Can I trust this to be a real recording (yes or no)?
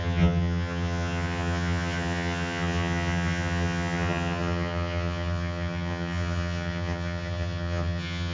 no